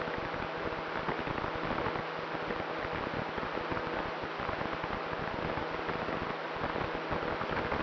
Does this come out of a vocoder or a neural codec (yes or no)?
no